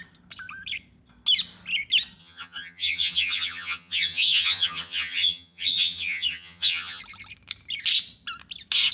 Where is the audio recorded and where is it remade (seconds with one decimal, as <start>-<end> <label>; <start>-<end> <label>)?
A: 0.0-2.2 recorded; 2.2-7.0 remade; 7.0-8.9 recorded